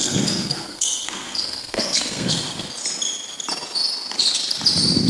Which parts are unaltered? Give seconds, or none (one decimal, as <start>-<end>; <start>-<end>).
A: 2.7-5.1